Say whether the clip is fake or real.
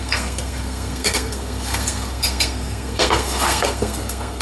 fake